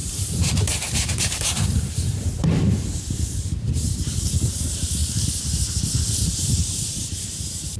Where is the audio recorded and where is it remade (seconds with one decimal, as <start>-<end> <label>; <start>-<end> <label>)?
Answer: 0.0-5.0 remade; 5.0-5.7 recorded; 5.7-7.8 remade